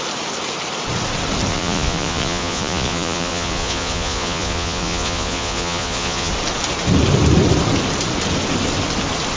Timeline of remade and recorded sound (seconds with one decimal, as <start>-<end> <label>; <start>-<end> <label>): 0.0-1.5 recorded; 1.5-6.3 remade; 6.3-9.4 recorded